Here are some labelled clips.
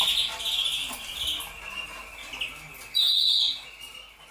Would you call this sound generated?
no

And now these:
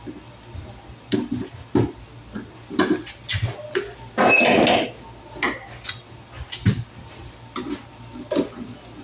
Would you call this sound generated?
no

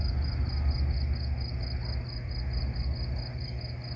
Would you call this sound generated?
no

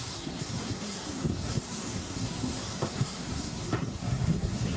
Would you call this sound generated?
yes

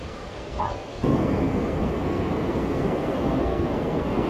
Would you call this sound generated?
yes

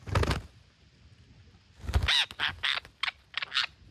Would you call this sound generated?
no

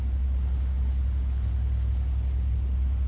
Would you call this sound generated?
no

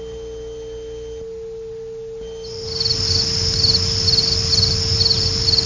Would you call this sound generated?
no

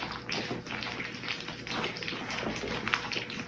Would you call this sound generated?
no